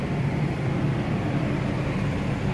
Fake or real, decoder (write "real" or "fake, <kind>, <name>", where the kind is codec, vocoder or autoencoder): fake, vocoder, BigVGAN v2